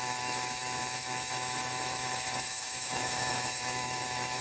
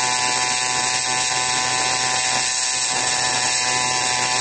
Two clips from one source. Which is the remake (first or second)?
first